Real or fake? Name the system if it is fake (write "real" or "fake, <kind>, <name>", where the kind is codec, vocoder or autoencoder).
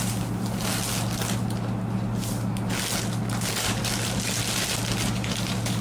real